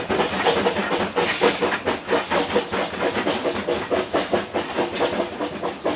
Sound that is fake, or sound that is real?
real